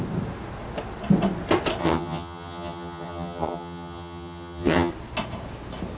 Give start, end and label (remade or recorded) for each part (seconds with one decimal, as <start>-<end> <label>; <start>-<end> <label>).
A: 0.0-1.8 recorded; 1.8-4.9 remade; 4.9-6.0 recorded